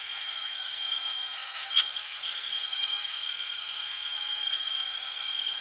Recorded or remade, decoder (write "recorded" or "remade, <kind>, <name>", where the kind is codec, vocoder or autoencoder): remade, codec, SNAC